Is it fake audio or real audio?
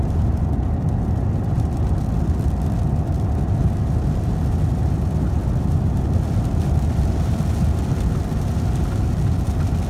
real